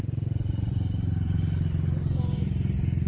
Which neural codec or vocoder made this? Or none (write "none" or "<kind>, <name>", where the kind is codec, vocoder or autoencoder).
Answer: vocoder, BigVGAN v2